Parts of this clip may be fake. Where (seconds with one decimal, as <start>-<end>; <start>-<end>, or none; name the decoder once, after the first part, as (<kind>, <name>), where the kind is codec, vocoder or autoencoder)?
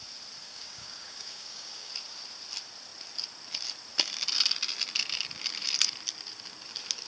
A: 0.4-1.9 (codec, DAC)